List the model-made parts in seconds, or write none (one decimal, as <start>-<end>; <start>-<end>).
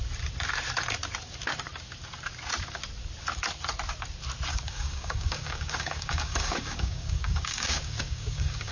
4.5-8.7